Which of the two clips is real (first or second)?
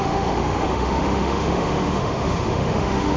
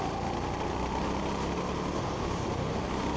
second